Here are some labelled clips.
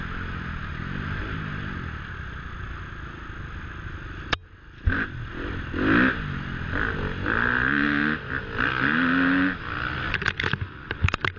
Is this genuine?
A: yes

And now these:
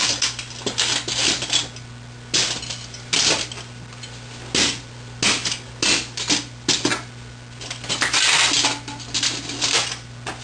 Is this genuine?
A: yes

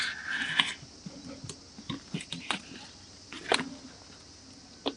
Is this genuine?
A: yes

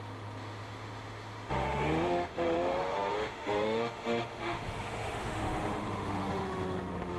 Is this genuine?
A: no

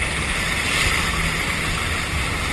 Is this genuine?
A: yes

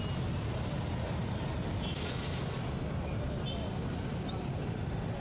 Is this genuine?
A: yes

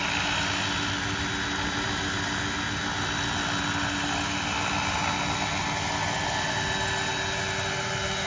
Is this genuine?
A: yes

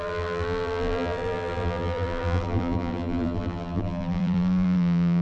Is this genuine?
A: no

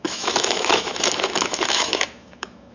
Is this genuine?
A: no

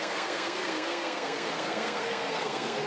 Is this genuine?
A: no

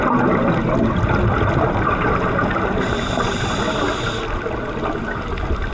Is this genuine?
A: yes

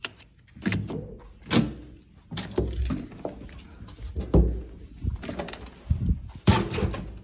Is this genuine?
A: yes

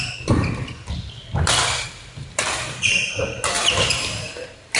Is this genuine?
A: yes